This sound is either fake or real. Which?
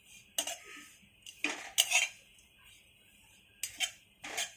real